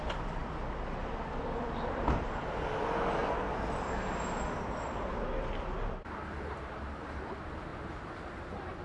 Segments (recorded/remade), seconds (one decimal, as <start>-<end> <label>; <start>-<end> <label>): 0.0-3.2 remade; 3.2-4.7 recorded; 4.7-8.8 remade